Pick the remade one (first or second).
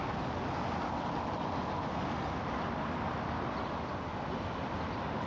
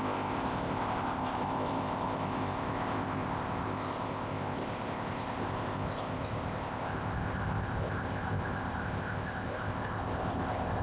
second